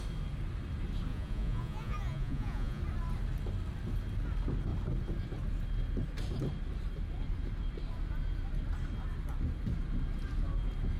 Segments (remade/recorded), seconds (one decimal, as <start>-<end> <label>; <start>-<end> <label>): 0.0-1.1 recorded; 1.1-2.8 remade; 2.8-11.0 recorded